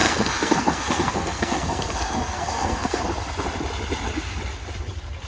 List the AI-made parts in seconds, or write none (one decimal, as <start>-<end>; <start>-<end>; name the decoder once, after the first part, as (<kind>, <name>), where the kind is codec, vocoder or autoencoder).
0.0-3.0 (codec, SNAC)